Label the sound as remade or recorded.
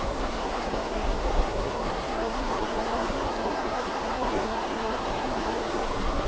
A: remade